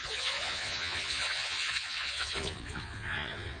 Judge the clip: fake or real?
fake